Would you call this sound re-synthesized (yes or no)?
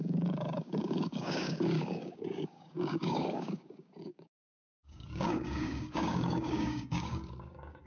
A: yes